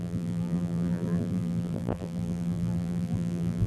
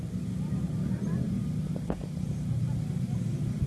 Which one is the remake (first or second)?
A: first